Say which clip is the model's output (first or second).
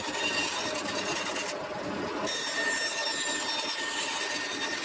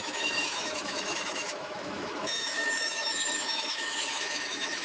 second